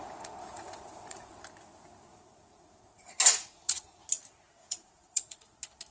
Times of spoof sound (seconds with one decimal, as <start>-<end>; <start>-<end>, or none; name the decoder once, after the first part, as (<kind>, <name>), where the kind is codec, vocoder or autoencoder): 0.0-1.3 (vocoder, Vocos); 2.1-4.0; 4.6-5.5